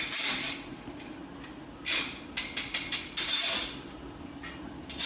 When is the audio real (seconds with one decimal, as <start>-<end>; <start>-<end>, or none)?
0.0-5.1